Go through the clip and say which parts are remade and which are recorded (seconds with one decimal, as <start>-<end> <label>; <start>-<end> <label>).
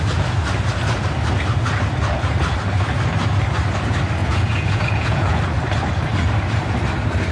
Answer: 0.0-4.2 recorded; 4.2-5.4 remade; 5.4-7.3 recorded